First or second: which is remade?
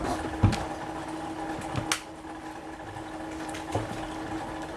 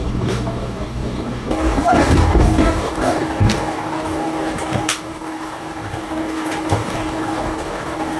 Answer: second